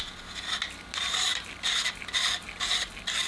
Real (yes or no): yes